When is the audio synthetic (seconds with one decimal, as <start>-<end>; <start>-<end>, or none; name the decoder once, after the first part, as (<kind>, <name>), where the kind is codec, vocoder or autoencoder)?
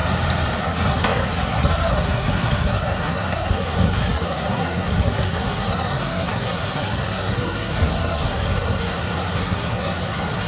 0.6-10.5 (codec, SNAC)